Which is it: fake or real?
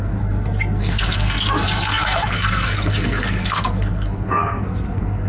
fake